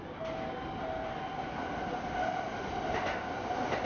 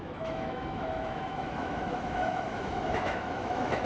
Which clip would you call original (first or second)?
first